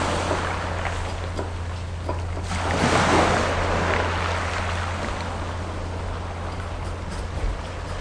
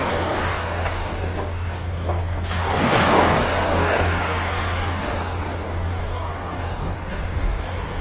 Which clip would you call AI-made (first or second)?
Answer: second